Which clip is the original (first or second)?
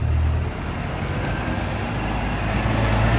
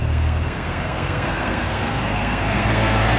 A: first